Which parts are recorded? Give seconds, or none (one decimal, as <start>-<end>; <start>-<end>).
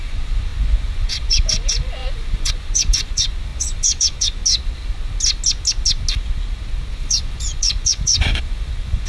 4.4-6.9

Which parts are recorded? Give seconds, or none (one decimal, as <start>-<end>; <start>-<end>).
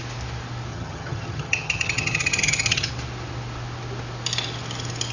0.0-0.7; 2.9-5.1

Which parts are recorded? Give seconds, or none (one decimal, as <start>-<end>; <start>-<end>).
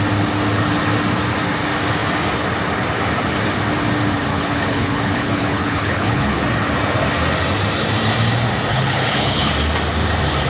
0.0-4.3; 6.4-8.7; 9.5-10.5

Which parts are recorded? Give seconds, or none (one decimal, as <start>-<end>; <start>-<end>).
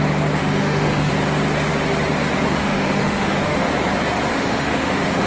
0.0-0.4; 1.1-2.6; 3.7-4.3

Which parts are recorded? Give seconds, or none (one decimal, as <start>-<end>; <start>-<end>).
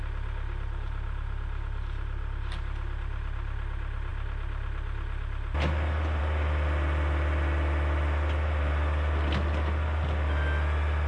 0.0-11.1